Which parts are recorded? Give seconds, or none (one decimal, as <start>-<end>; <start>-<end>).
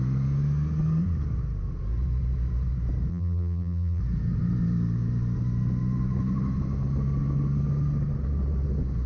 0.0-3.1; 4.0-9.1